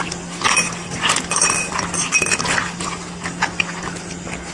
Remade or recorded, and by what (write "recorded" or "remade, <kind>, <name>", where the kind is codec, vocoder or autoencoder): recorded